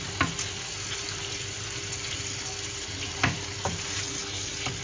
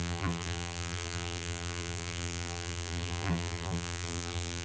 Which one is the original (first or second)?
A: first